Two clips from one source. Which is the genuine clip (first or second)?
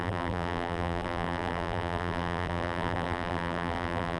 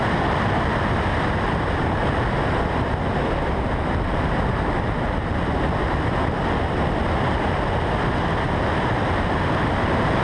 second